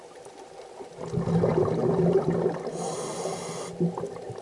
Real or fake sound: real